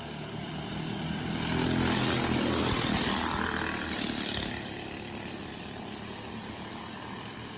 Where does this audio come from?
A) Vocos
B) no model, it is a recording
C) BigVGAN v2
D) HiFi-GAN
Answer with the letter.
B